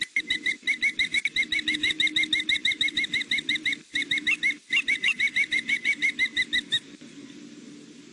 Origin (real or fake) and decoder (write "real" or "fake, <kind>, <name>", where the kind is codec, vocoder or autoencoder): fake, vocoder, BigVGAN v2